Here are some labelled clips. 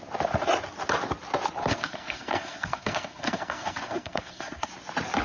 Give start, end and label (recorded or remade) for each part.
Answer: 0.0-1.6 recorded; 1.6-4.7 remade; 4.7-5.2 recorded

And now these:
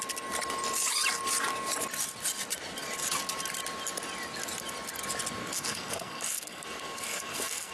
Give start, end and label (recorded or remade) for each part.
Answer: 0.0-5.4 recorded; 5.4-7.7 remade

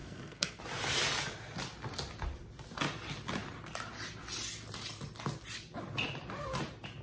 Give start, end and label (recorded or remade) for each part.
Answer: 0.0-0.6 remade; 0.6-7.0 recorded

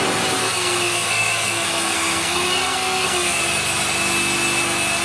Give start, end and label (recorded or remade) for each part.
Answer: 0.0-0.4 recorded; 0.4-3.4 remade; 3.4-5.0 recorded

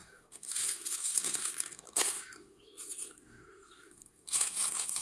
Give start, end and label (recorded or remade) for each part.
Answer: 0.0-5.0 remade

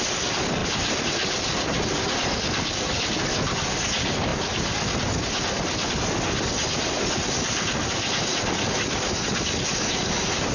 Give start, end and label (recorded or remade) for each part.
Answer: 0.0-10.5 recorded

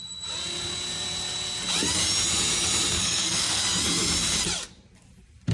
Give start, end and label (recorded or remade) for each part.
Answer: 0.0-3.0 recorded; 3.0-3.6 remade; 3.6-5.5 recorded